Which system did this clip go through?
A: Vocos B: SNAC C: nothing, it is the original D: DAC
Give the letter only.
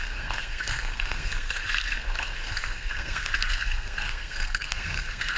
B